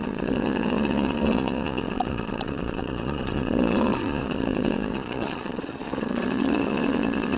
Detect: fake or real fake